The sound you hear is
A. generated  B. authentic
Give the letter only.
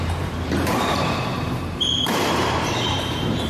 A